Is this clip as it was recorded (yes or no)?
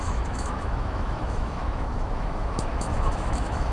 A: no